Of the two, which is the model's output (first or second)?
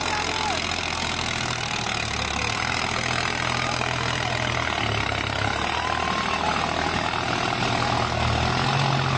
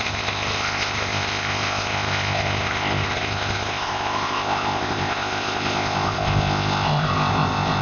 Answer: second